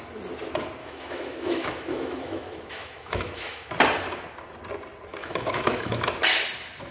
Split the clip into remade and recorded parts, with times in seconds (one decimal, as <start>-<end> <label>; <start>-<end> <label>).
0.0-0.8 recorded; 0.8-3.7 remade; 3.7-5.2 recorded; 5.2-6.1 remade; 6.1-6.9 recorded